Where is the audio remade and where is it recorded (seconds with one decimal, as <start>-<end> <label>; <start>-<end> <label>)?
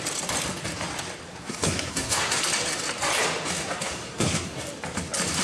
0.0-1.3 recorded; 1.3-2.4 remade; 2.4-3.6 recorded; 3.6-4.6 remade; 4.6-5.4 recorded